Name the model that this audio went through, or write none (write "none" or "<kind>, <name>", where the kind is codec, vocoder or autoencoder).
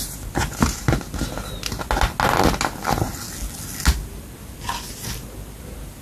none